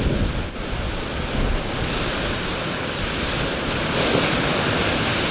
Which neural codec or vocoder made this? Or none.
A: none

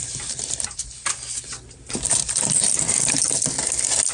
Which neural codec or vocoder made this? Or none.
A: none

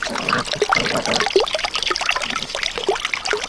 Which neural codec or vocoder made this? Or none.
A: vocoder, BigVGAN v2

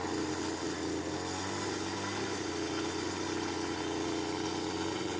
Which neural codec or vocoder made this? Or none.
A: none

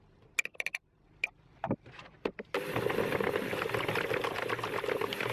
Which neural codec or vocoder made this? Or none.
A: none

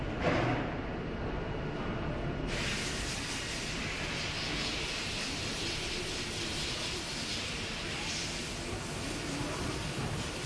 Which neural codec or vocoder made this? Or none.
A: none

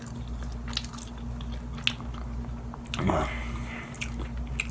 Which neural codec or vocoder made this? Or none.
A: none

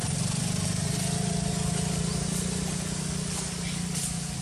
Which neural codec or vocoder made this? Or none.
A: none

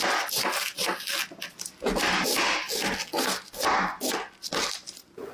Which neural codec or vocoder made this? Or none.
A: none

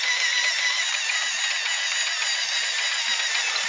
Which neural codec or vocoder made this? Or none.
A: none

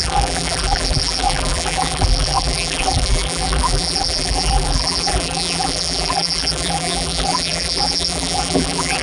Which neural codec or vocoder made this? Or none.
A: vocoder, BigVGAN v2